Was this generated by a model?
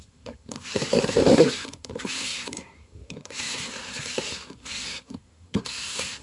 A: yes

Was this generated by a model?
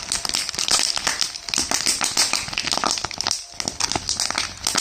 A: no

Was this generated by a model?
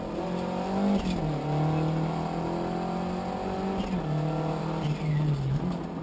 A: no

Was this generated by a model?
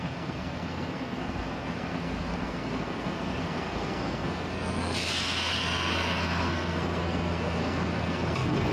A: yes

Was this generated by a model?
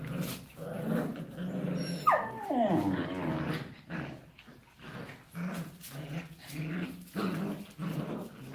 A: no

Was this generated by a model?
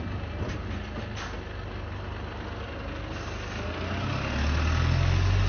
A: no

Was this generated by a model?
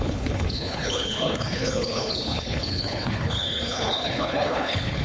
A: yes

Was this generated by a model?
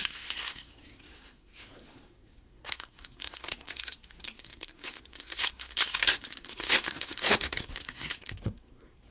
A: yes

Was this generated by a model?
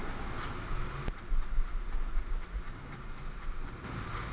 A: no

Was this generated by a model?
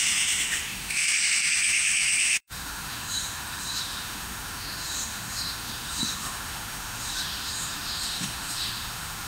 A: yes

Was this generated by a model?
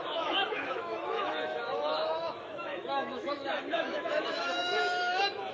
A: yes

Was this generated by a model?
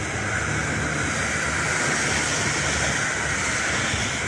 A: no